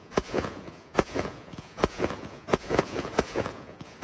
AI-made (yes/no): yes